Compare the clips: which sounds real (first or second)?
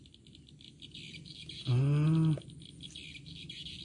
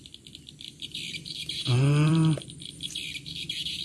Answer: first